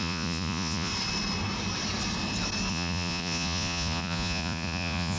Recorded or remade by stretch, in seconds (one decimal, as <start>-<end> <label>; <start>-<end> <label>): 0.0-0.9 remade; 0.9-2.7 recorded; 2.7-5.2 remade